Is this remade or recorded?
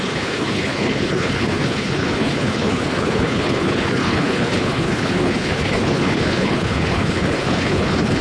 remade